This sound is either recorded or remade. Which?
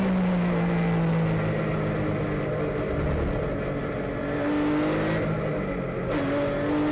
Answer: recorded